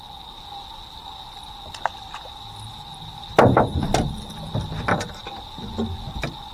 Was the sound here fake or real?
real